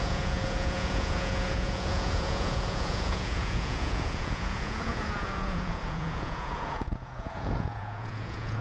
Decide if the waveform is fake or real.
fake